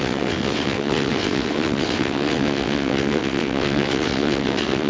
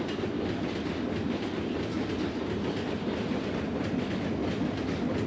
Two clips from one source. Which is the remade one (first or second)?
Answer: first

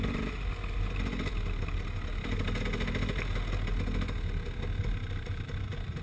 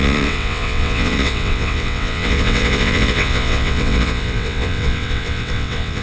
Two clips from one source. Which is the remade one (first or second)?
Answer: second